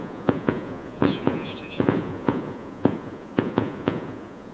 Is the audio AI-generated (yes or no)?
yes